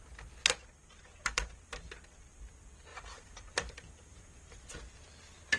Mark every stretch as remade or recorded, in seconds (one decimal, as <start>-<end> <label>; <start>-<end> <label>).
0.0-0.8 recorded; 0.8-1.9 remade; 1.9-2.9 recorded; 2.9-4.7 remade; 4.7-5.6 recorded